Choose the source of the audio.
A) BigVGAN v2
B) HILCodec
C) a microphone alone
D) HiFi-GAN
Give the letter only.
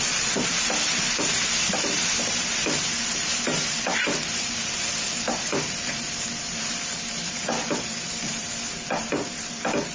A